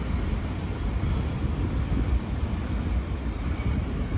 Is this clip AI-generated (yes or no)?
no